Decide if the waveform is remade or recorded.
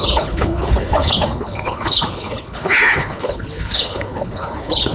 remade